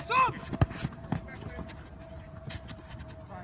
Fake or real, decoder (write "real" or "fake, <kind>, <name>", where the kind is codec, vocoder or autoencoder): real